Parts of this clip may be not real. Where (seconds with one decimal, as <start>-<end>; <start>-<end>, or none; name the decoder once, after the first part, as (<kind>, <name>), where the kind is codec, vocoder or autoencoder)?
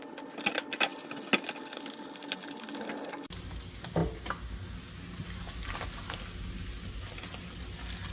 none